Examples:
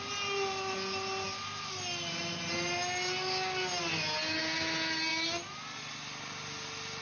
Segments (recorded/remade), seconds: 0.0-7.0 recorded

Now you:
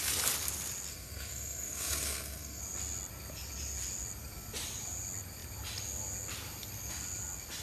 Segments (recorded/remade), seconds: 0.0-0.9 recorded; 0.9-2.6 remade; 2.6-7.6 recorded

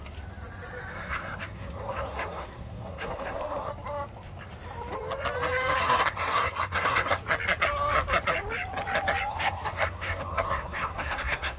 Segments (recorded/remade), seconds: 0.0-0.9 recorded; 0.9-3.7 remade; 3.7-5.8 recorded; 5.8-7.2 remade; 7.2-9.3 recorded; 9.3-11.6 remade

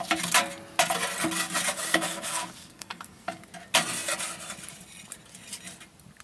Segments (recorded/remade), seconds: 0.0-1.9 recorded; 1.9-3.4 remade; 3.4-6.2 recorded

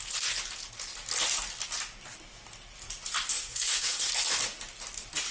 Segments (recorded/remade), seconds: 0.0-3.3 recorded; 3.3-4.1 remade; 4.1-5.3 recorded

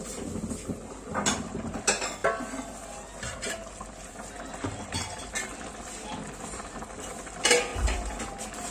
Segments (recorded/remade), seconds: 0.0-8.7 recorded

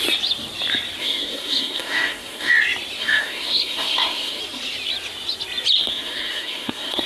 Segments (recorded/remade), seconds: 0.0-1.0 recorded; 1.0-2.5 remade; 2.5-3.0 recorded; 3.0-4.4 remade; 4.4-5.9 recorded; 5.9-7.1 remade